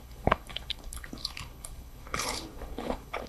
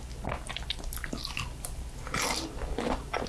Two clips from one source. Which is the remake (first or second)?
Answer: first